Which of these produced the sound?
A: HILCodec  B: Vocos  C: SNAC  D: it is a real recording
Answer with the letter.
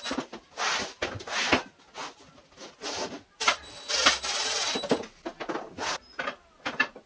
D